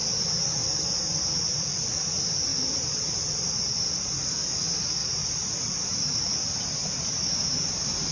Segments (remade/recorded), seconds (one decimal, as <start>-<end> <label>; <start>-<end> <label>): 0.0-0.9 remade; 0.9-5.0 recorded; 5.0-5.8 remade; 5.8-8.1 recorded